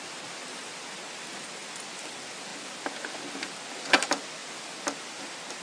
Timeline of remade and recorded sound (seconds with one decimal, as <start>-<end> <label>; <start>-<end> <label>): 0.0-5.6 recorded